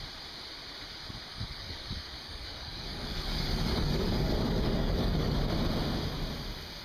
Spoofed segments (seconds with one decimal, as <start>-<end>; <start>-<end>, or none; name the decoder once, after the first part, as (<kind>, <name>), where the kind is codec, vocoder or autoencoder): 1.3-5.4 (codec, DAC)